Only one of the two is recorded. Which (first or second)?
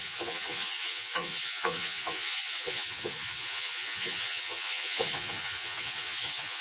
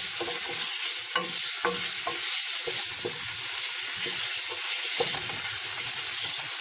second